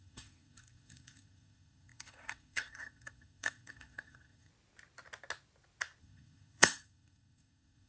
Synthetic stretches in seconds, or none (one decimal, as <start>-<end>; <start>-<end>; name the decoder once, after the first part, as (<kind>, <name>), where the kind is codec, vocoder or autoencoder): 0.0-4.5 (codec, SNAC); 6.0-7.9